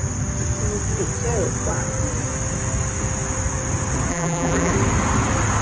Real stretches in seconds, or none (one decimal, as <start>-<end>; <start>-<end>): 0.0-4.1; 4.7-5.6